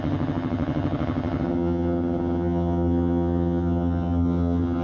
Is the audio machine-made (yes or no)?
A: yes